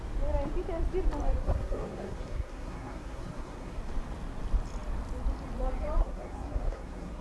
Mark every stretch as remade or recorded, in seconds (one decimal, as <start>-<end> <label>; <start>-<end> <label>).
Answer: 0.0-1.4 recorded; 1.4-3.8 remade; 3.8-6.0 recorded; 6.0-7.2 remade